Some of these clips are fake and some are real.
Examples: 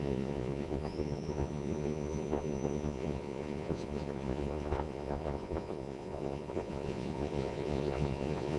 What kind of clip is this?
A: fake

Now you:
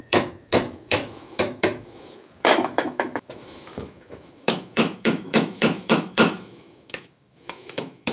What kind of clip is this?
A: fake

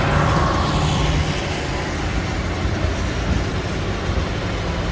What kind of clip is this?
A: real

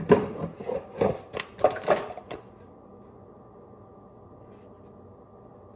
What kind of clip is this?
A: real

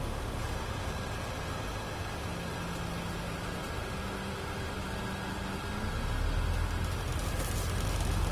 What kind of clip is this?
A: real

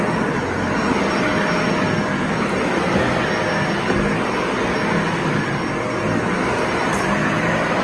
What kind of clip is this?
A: real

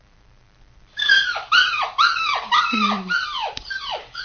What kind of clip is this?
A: fake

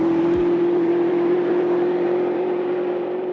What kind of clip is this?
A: fake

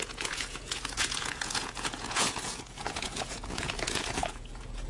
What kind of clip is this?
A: fake